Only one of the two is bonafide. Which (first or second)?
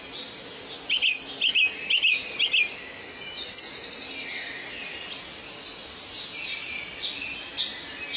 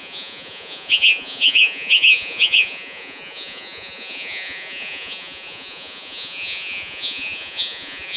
first